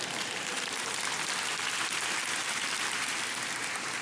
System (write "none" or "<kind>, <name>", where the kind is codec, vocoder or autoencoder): none